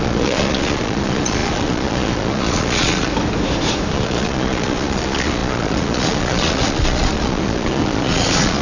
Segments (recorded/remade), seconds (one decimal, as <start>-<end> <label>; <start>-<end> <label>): 0.0-3.1 remade; 3.1-3.9 recorded; 3.9-8.6 remade